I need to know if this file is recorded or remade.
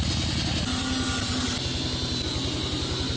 recorded